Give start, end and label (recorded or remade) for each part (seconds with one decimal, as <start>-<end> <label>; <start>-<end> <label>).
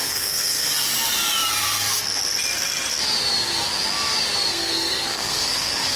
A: 0.0-0.7 remade; 0.7-4.5 recorded; 4.5-6.0 remade